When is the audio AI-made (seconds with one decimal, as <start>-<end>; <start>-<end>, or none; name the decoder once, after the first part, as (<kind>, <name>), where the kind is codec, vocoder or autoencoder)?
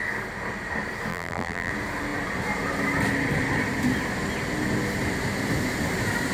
1.1-1.7 (vocoder, BigVGAN v2)